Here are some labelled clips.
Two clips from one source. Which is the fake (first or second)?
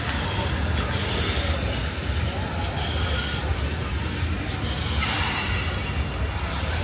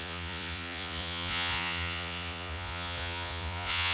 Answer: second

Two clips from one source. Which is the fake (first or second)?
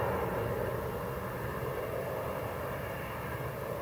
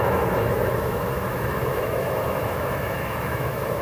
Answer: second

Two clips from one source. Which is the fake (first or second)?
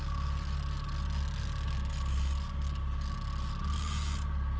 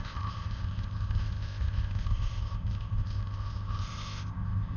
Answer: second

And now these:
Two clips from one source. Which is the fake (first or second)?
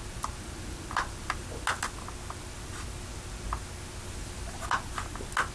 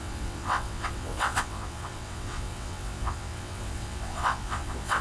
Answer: second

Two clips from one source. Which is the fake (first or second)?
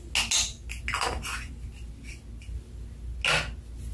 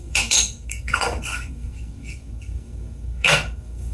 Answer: second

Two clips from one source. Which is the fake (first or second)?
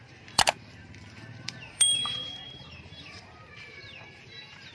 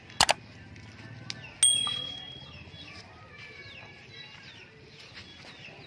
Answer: first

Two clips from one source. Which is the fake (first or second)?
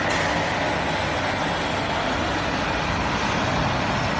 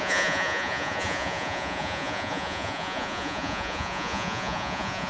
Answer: second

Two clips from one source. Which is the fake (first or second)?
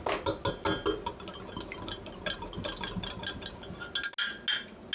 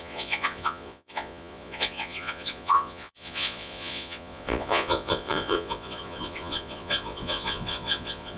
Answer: second